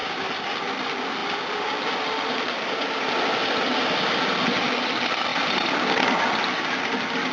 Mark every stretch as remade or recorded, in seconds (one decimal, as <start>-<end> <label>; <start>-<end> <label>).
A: 0.0-7.3 recorded